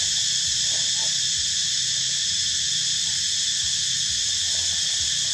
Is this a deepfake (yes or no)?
no